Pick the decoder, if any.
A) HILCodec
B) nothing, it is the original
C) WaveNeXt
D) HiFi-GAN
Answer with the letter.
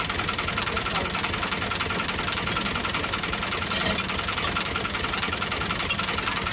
B